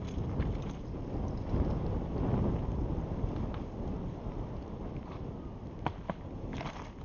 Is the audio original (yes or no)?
yes